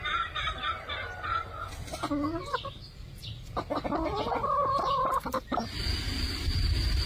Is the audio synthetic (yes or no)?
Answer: no